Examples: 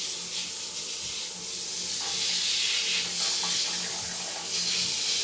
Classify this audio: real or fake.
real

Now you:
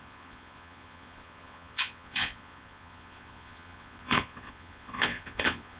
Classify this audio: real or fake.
fake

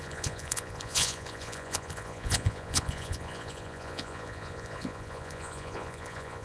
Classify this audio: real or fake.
fake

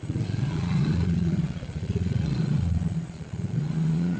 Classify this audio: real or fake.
fake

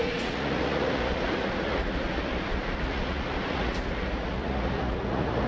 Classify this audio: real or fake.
fake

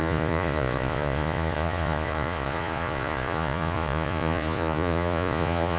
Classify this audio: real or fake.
fake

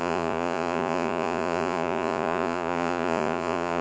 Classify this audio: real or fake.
fake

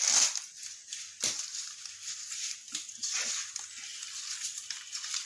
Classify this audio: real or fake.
real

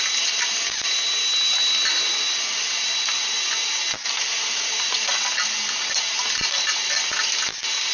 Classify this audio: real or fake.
real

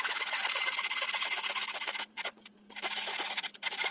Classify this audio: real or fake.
fake